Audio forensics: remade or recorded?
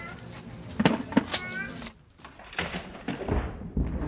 recorded